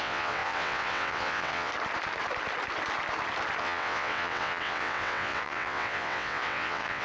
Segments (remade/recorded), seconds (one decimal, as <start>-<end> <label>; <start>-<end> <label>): 0.0-1.7 remade; 1.7-3.6 recorded; 3.6-7.0 remade